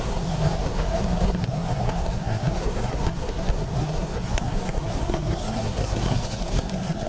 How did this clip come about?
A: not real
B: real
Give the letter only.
A